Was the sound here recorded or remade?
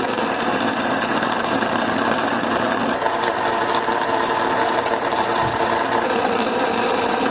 remade